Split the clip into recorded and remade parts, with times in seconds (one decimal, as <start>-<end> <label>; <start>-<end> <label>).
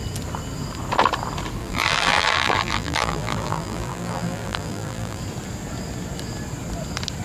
0.0-1.6 recorded; 1.6-5.2 remade; 5.2-7.2 recorded